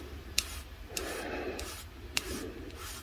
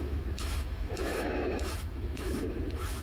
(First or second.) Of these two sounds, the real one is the first